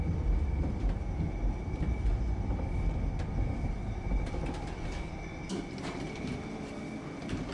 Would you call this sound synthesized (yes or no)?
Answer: no